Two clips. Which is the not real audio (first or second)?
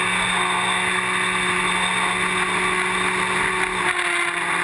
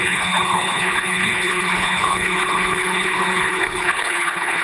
second